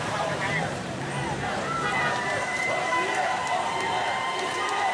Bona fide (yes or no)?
no